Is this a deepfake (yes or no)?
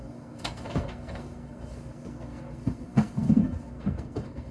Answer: yes